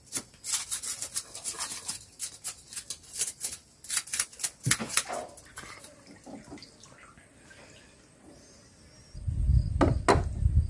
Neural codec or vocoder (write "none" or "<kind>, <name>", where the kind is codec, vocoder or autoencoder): none